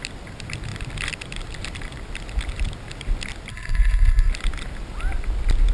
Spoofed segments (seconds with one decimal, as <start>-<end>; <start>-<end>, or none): 3.5-4.3